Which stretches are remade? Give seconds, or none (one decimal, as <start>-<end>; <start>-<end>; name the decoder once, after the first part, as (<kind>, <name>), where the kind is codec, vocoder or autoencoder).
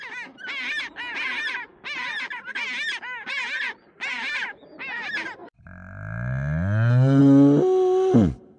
none